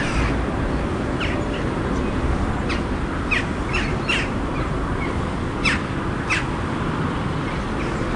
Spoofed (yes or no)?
no